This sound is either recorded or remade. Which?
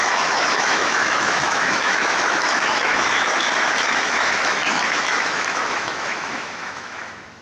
remade